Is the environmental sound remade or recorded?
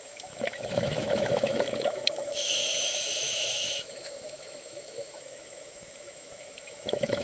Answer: remade